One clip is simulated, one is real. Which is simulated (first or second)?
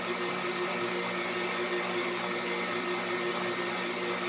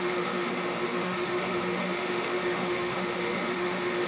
second